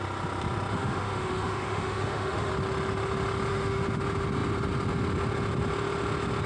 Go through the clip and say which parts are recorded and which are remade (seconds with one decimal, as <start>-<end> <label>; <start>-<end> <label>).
0.0-0.7 recorded; 0.7-2.5 remade; 2.5-3.5 recorded; 3.5-4.0 remade; 4.0-6.5 recorded